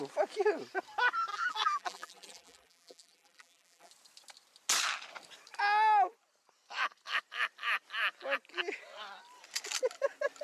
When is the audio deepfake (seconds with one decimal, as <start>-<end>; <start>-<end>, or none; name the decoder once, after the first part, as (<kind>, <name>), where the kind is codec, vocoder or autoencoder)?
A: 1.3-3.9 (vocoder, BigVGAN v2)